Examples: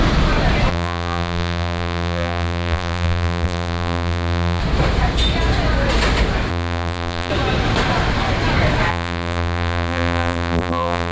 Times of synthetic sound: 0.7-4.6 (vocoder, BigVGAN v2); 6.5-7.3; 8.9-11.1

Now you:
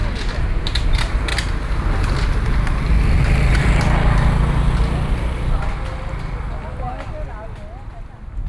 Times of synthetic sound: none